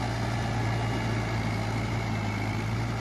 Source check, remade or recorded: recorded